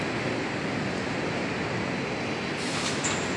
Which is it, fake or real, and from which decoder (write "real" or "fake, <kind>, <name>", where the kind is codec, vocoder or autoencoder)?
real